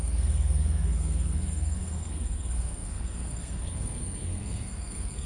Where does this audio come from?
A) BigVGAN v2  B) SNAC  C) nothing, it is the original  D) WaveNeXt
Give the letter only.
B